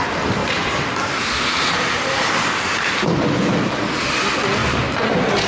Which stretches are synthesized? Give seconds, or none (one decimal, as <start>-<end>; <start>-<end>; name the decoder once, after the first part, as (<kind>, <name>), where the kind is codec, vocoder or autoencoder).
0.4-2.3 (vocoder, BigVGAN v2); 4.6-5.5